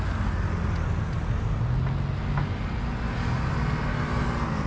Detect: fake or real real